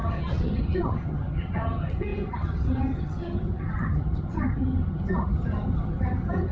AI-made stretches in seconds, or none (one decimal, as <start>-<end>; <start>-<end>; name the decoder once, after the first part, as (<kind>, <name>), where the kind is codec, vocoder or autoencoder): 0.0-6.5 (vocoder, HiFi-GAN)